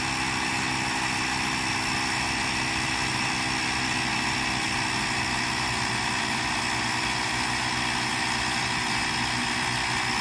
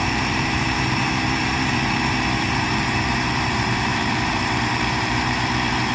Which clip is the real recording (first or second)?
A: first